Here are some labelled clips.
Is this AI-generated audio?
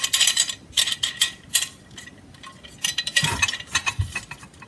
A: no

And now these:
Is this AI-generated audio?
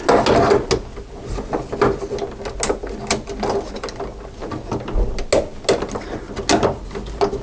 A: no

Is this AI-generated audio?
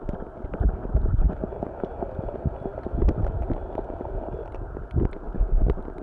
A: no